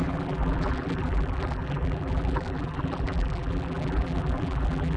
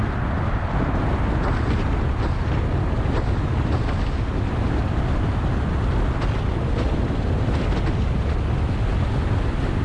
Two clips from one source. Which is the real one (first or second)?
second